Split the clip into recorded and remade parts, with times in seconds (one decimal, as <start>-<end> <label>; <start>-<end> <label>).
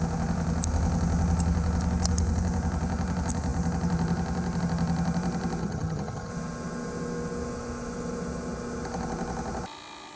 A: 0.0-5.6 recorded; 5.6-6.3 remade; 6.3-10.2 recorded